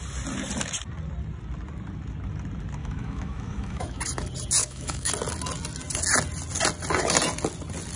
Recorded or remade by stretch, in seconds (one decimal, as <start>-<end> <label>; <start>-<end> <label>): 0.0-2.8 recorded; 2.8-4.0 remade; 4.0-4.6 recorded; 4.6-5.1 remade; 5.1-8.0 recorded